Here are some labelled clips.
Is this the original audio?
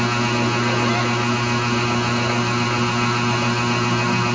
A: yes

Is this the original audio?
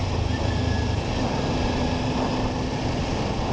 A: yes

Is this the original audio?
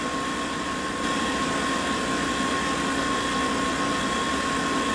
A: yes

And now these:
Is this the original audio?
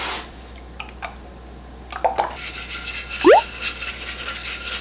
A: yes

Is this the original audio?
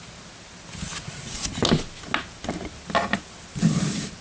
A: yes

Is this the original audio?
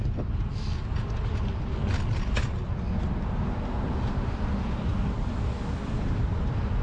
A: yes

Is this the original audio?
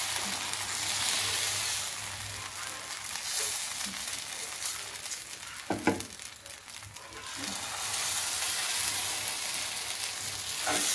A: yes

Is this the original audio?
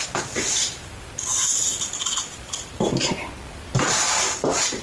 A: no